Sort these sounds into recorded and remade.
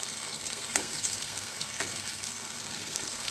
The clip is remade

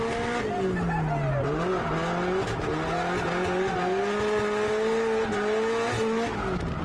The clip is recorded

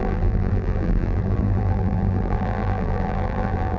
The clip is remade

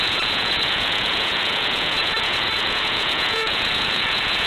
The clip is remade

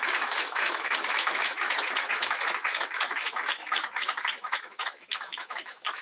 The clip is remade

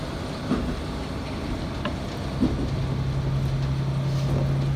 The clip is recorded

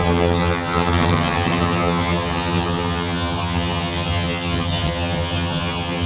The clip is remade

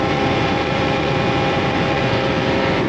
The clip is remade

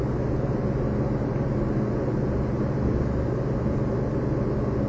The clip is recorded